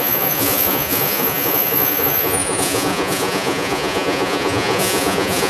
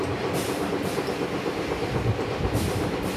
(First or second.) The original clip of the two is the second